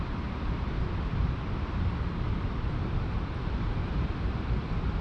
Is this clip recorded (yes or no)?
no